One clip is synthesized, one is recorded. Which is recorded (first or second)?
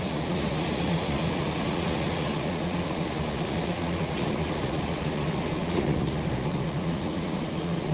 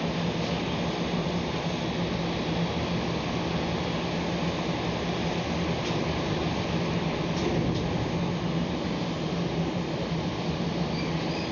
second